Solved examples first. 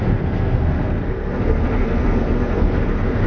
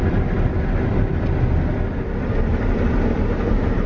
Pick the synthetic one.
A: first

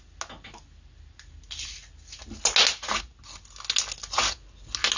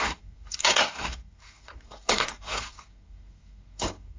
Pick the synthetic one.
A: second